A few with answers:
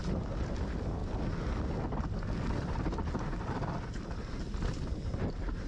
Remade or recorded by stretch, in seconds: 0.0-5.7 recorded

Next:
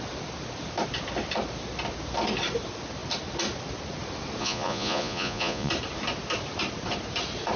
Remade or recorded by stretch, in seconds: 0.0-4.4 recorded; 4.4-5.7 remade; 5.7-7.6 recorded

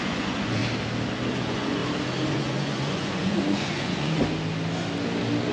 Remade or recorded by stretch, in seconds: 0.0-0.6 remade; 0.6-1.3 recorded; 1.3-1.8 remade; 1.8-2.3 recorded; 2.3-4.2 remade; 4.2-5.5 recorded